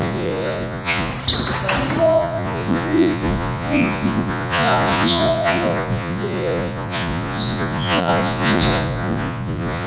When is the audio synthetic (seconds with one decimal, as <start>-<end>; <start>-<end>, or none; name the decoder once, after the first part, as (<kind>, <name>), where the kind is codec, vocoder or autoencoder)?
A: 0.0-1.1 (vocoder, Vocos); 2.0-9.9